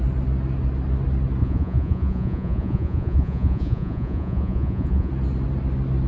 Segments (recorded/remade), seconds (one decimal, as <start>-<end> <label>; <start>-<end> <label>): 0.0-1.4 recorded; 1.4-5.1 remade; 5.1-6.1 recorded

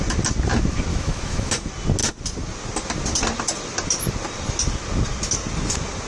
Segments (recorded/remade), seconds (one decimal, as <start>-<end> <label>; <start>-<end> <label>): 0.0-0.9 recorded; 0.9-1.5 remade; 1.5-6.1 recorded

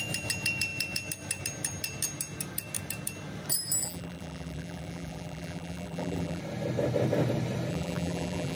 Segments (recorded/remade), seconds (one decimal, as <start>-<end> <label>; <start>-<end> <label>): 0.0-3.8 recorded; 3.8-6.4 remade; 6.4-7.7 recorded; 7.7-8.6 remade

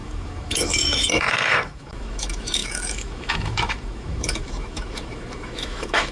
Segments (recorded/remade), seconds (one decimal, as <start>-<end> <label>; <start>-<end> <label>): 0.0-6.1 remade

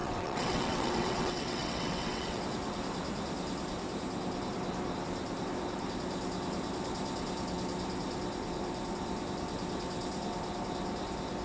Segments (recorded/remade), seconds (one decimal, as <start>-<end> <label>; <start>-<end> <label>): 0.0-2.4 remade; 2.4-11.4 recorded

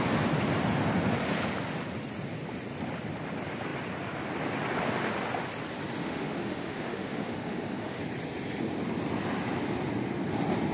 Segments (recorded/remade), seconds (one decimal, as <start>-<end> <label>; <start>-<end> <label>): 0.0-6.0 recorded; 6.0-8.0 remade; 8.0-10.7 recorded